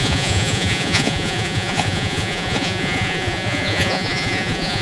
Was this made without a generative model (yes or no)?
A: no